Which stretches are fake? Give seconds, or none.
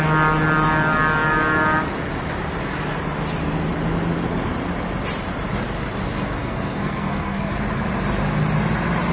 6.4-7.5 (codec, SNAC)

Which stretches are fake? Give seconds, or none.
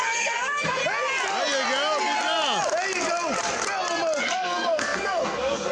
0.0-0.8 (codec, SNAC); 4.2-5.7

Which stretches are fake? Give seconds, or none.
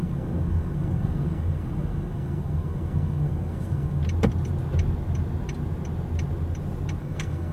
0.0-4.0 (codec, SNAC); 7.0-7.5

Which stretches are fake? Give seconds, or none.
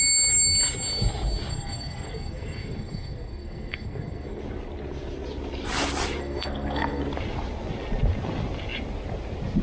1.5-4.4 (codec, SNAC); 6.2-7.0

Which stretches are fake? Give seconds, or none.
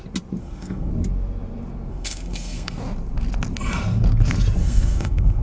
0.4-0.9 (codec, SNAC); 1.9-2.8; 4.6-5.4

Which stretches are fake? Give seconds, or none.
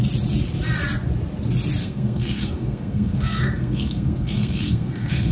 1.8-5.3 (codec, SNAC)